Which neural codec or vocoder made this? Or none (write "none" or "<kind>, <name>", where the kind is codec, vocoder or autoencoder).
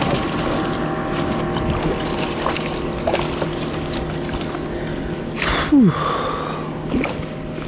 none